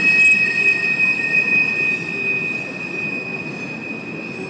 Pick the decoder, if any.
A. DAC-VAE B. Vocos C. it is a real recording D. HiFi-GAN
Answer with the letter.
C